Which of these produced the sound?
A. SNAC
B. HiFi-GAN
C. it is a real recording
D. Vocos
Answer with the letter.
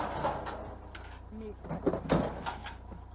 C